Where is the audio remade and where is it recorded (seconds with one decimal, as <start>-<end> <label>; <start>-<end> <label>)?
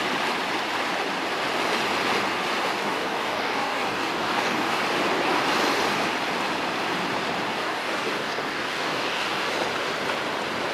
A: 0.0-2.8 recorded; 2.8-4.8 remade; 4.8-7.5 recorded; 7.5-9.5 remade; 9.5-10.7 recorded